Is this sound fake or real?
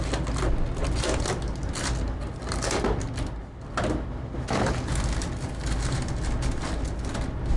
real